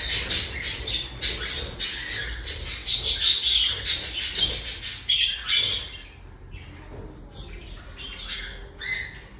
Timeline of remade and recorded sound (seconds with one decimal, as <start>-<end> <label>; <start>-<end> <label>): 0.0-9.4 recorded

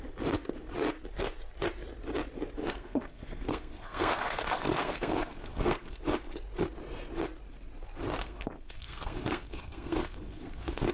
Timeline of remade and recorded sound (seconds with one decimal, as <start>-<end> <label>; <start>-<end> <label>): 0.0-2.6 recorded; 2.6-6.0 remade; 6.0-8.2 recorded; 8.2-10.9 remade

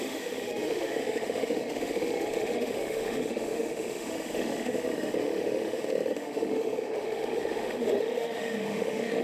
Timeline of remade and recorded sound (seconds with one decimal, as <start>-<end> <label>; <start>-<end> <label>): 0.0-9.2 remade

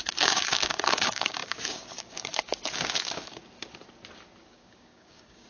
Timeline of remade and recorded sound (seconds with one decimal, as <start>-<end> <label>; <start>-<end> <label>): 0.0-3.4 remade; 3.4-4.4 recorded; 4.4-5.5 remade

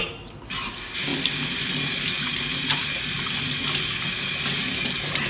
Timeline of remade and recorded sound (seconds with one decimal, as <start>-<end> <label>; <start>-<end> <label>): 0.0-5.3 recorded

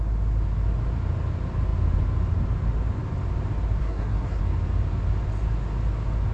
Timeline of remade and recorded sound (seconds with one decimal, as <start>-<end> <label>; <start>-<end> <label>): 0.0-3.8 recorded; 3.8-4.4 remade; 4.4-6.3 recorded

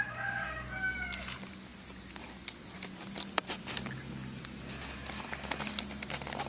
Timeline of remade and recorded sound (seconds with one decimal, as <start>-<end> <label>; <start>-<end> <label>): 0.0-6.5 recorded